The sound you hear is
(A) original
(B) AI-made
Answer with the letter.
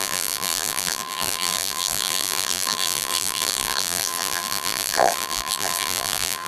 B